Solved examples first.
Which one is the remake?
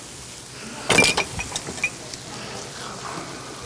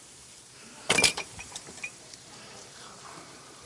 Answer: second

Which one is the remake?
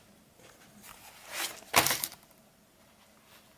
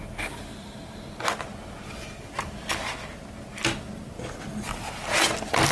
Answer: first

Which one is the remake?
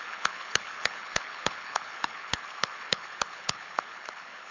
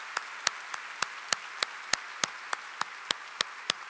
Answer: first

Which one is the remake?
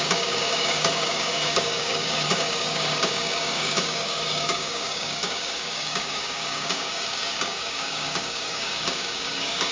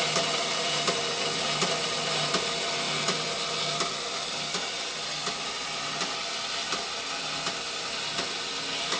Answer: first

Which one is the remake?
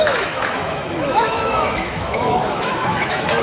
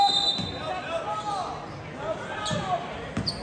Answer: first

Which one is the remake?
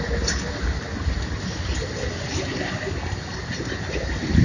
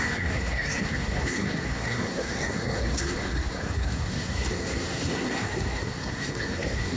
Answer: second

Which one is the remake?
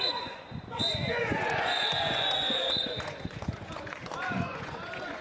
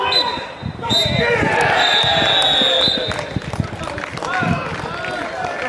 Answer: first